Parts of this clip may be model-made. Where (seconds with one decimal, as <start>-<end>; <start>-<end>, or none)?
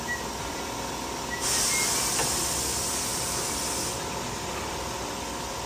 3.1-3.6